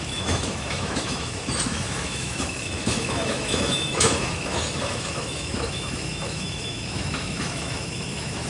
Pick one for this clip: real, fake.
fake